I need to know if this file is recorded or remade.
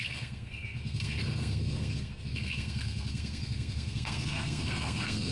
remade